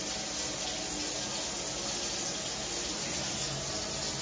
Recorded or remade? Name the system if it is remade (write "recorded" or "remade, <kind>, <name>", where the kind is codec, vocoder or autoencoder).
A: recorded